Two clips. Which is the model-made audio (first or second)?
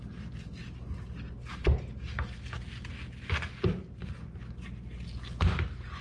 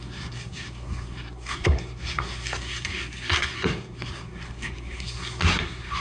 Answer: second